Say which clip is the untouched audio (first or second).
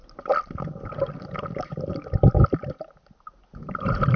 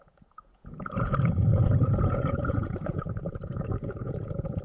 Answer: first